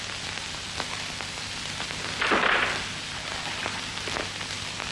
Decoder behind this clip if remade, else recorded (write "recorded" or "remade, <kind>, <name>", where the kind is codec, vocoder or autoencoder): recorded